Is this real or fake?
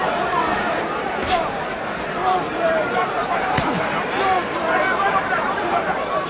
fake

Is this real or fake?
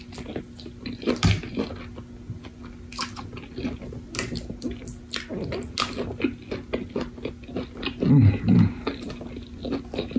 real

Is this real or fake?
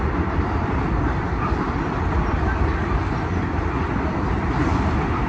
real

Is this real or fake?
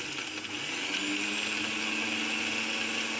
real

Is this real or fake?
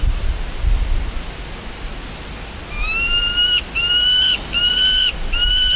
real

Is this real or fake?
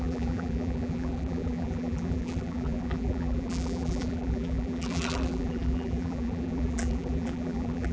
fake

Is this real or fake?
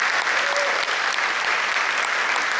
fake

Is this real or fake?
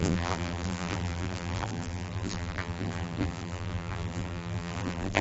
fake